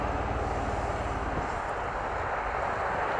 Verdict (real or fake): real